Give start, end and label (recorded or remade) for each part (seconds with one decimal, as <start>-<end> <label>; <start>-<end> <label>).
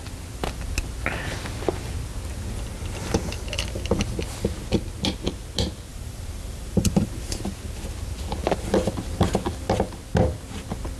0.0-5.9 recorded; 5.9-7.2 remade; 7.2-11.0 recorded